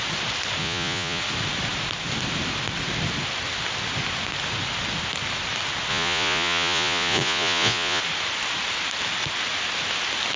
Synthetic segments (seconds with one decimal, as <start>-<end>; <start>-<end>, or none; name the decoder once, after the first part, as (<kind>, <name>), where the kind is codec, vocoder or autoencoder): 0.6-1.2 (vocoder, Vocos); 5.9-8.0